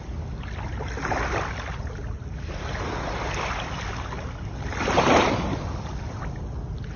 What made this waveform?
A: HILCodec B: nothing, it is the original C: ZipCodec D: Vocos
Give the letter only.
B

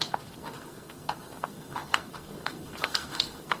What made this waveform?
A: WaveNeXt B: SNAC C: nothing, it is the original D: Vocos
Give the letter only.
B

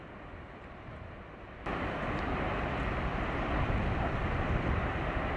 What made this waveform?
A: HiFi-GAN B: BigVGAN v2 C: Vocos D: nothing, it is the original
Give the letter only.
B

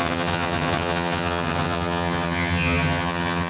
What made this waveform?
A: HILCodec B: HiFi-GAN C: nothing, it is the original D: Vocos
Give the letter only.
B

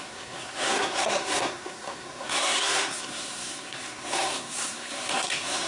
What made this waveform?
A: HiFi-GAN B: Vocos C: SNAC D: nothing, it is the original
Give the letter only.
C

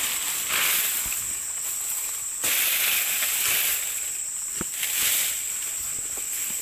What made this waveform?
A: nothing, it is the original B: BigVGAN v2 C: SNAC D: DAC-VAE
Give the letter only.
A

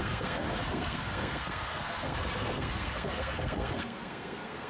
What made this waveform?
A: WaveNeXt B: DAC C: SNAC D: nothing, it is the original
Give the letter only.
C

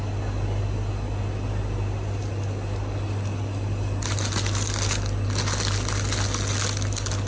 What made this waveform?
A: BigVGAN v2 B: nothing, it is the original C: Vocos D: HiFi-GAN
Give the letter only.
B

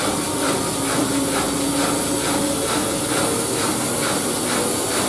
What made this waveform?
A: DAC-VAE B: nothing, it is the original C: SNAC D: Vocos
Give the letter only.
B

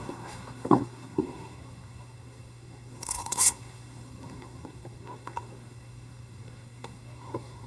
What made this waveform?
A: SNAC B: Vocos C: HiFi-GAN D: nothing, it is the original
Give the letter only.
A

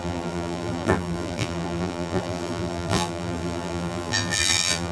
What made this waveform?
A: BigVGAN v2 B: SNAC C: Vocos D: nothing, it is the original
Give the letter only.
A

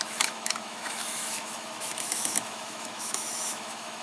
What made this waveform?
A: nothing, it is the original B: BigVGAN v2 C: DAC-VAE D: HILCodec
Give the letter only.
C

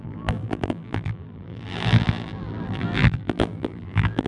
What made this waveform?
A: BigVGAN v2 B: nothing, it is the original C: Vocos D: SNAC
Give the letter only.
A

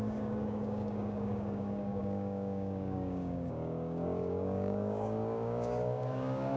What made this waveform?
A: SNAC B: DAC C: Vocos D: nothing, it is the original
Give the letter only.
B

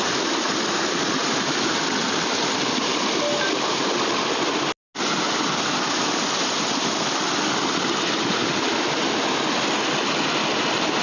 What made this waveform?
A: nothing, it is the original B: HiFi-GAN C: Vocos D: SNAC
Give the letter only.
A